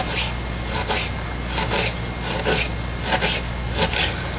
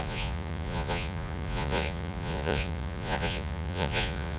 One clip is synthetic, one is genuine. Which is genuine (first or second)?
first